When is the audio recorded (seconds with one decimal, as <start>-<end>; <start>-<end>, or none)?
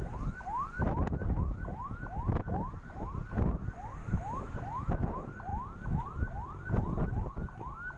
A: 0.0-4.0; 4.9-8.0